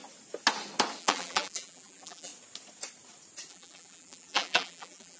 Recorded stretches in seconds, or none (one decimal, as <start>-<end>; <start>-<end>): 0.0-1.0; 2.3-3.5